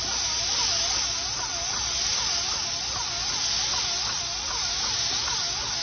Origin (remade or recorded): recorded